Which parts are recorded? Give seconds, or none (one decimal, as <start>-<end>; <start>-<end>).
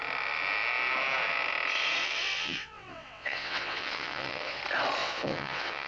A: 0.0-2.0; 4.6-5.0